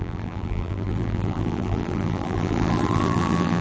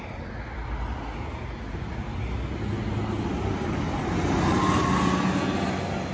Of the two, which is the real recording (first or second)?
second